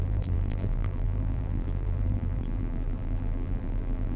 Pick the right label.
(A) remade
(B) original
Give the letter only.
A